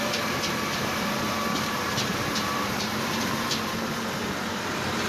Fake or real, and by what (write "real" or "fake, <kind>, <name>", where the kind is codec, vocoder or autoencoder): fake, vocoder, BigVGAN v2